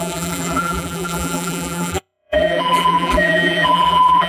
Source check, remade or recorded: remade